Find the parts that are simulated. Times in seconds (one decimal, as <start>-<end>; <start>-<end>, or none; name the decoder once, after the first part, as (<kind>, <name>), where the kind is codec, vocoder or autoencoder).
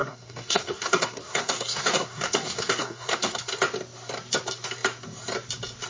0.0-3.5 (codec, SNAC)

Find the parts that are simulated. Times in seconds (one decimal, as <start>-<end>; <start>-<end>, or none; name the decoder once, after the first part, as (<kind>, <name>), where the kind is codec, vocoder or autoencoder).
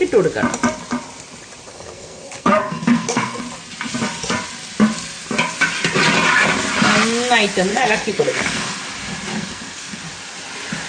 1.7-3.4 (codec, SNAC); 7.7-8.8; 9.3-10.0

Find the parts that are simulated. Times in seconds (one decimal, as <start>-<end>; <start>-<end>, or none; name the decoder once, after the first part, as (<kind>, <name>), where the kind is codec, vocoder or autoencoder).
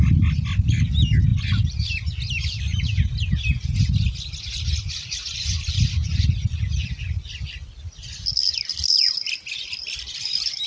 none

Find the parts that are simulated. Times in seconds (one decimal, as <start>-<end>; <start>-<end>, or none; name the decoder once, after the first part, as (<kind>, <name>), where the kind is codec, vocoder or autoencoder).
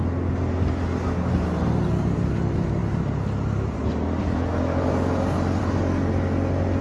none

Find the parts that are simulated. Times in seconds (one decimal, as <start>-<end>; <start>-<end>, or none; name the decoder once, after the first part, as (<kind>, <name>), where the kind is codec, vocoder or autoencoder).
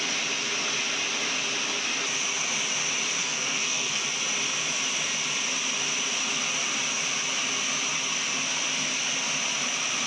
3.2-4.0 (codec, SNAC)